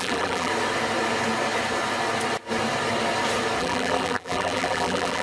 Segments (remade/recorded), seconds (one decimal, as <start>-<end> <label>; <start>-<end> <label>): 0.0-0.5 remade; 0.5-3.6 recorded; 3.6-5.2 remade